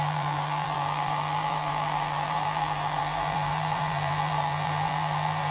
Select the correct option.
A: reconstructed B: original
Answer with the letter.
A